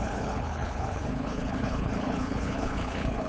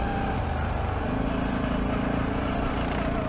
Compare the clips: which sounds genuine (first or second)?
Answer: second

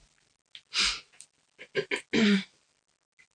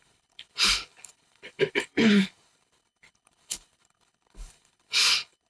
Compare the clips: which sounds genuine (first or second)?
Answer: first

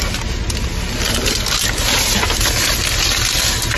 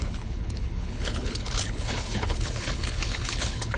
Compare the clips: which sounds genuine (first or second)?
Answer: first